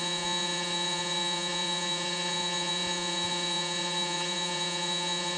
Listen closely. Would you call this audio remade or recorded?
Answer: remade